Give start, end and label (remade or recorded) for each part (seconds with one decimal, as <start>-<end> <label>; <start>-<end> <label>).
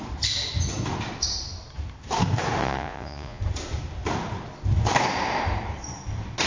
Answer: 0.0-2.6 recorded; 2.6-3.4 remade; 3.4-6.5 recorded